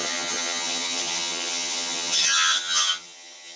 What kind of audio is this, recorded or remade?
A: remade